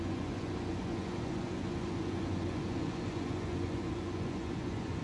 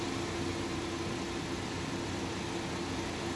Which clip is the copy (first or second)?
first